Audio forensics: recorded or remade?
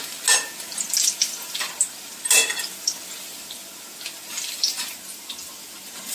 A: recorded